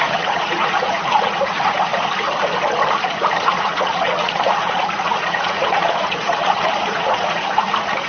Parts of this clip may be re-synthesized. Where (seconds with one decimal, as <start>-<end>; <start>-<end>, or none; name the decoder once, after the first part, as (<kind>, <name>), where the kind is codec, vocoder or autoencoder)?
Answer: 0.0-1.9 (vocoder, Vocos); 3.0-8.1